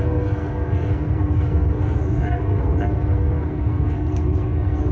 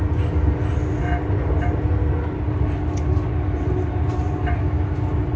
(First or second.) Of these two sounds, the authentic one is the second